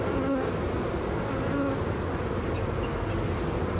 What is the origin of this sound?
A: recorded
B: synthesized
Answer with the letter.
A